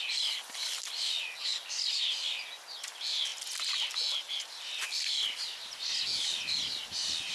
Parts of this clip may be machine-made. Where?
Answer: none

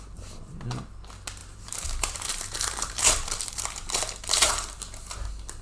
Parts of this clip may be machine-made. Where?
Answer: 1.4-4.8 (vocoder, BigVGAN v2)